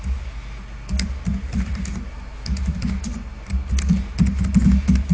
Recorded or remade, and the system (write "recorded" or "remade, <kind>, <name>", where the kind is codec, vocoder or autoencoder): recorded